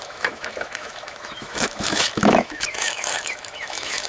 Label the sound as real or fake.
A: fake